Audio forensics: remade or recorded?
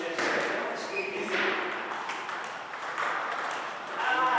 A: remade